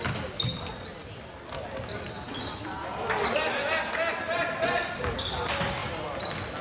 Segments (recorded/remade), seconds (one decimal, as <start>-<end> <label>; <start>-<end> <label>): 0.0-6.6 recorded